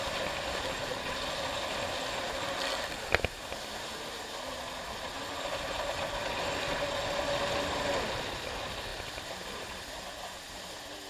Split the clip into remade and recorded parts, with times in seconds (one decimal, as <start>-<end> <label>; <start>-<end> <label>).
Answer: 0.0-11.1 recorded